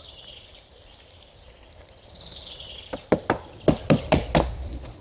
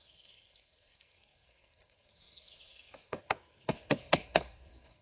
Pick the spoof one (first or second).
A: second